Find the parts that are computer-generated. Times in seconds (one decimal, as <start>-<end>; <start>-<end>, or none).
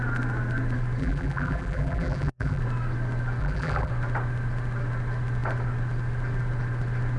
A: 1.0-2.6; 3.4-3.9